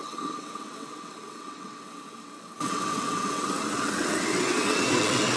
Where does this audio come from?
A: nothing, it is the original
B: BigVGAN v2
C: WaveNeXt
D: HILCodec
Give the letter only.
C